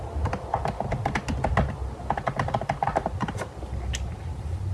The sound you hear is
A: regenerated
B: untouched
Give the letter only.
B